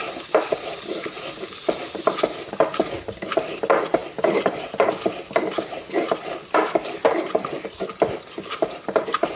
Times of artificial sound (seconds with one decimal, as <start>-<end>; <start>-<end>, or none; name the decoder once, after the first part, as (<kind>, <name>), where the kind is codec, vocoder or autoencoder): none